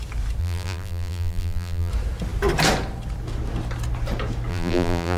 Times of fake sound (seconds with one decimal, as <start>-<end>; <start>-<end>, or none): 0.4-1.9; 4.5-5.2